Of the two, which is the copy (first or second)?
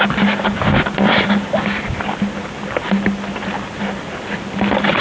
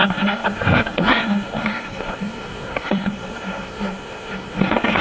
second